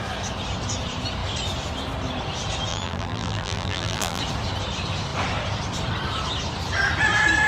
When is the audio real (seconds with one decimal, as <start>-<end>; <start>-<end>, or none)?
0.0-2.7; 4.2-7.5